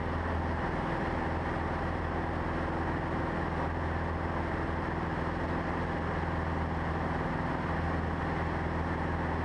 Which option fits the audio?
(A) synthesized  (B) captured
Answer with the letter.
B